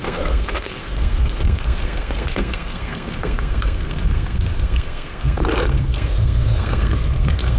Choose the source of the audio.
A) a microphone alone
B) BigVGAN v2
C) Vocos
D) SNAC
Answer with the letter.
D